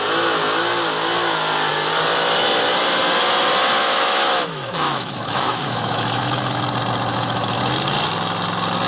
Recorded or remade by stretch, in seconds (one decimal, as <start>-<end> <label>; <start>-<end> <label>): 0.0-3.8 recorded; 3.8-6.6 remade; 6.6-7.1 recorded; 7.1-7.6 remade; 7.6-8.9 recorded